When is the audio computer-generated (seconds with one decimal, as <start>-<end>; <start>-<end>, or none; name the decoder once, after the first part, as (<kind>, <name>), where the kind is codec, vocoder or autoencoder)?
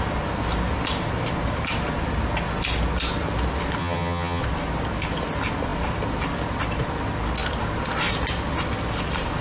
3.8-4.4 (vocoder, HiFi-GAN)